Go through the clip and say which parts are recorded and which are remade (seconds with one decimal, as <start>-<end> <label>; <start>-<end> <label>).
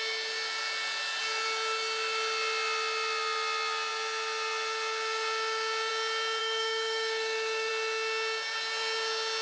0.0-6.4 recorded; 6.4-7.7 remade; 7.7-9.4 recorded